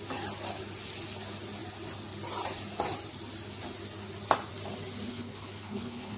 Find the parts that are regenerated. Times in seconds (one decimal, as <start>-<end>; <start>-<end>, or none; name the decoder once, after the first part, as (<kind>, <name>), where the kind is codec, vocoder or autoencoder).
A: 5.1-6.2 (codec, HILCodec)